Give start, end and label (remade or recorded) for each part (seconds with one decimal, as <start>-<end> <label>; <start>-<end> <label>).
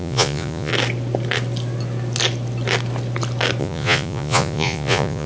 0.0-0.7 remade; 0.7-3.6 recorded; 3.6-5.3 remade